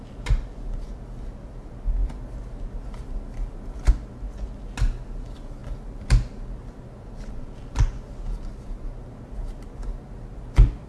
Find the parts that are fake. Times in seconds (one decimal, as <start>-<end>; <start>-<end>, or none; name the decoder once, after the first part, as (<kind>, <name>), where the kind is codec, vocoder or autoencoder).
none